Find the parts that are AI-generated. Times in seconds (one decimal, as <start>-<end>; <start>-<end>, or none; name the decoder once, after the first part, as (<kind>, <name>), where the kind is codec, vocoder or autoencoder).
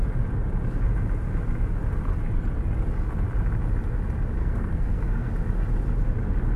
4.4-5.3 (codec, SNAC)